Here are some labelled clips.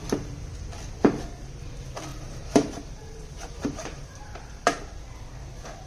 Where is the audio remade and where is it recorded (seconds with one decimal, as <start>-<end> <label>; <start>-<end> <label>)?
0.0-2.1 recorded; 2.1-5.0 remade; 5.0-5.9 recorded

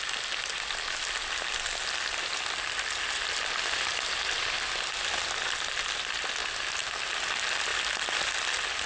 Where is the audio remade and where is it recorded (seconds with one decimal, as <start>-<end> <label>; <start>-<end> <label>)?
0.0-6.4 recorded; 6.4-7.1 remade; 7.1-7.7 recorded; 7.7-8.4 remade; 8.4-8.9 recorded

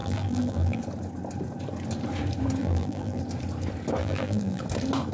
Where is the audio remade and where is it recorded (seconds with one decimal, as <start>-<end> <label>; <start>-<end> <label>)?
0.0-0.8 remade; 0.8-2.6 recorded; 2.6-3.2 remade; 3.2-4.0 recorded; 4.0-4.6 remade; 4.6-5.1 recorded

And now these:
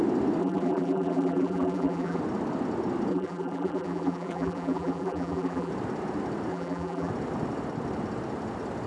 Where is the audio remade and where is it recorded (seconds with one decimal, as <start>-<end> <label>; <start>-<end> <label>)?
0.0-0.4 recorded; 0.4-2.2 remade; 2.2-3.1 recorded; 3.1-5.7 remade; 5.7-6.5 recorded; 6.5-7.1 remade; 7.1-8.9 recorded